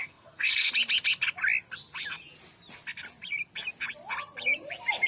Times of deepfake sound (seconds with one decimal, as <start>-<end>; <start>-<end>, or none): 0.0-0.7